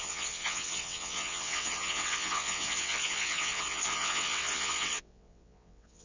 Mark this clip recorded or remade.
remade